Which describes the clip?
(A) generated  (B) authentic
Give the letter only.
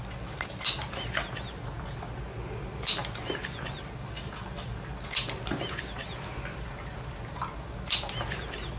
B